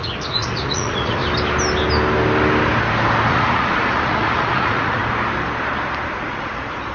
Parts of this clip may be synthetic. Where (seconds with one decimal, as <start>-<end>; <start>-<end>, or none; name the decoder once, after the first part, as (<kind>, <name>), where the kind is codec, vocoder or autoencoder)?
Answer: 0.0-1.2 (vocoder, Vocos); 3.3-5.0; 6.1-6.9